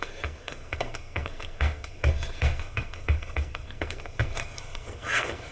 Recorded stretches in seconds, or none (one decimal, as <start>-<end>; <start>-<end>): none

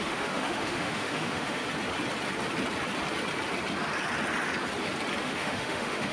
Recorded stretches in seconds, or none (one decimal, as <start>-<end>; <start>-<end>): 1.6-5.2

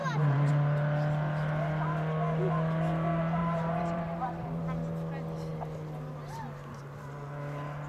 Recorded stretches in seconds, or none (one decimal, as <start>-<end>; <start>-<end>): 0.5-3.4; 4.4-7.9

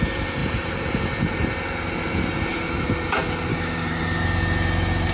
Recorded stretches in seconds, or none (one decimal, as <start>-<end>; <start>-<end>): 0.0-3.5; 4.0-5.1

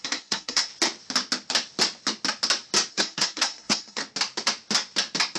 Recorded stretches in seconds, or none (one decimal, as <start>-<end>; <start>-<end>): 0.7-2.9; 4.0-5.4

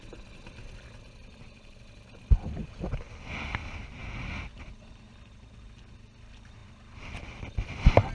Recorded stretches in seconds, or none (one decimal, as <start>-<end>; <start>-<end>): 0.0-8.1

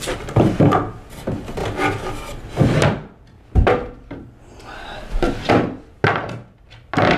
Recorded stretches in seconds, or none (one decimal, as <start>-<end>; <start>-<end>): 0.0-7.2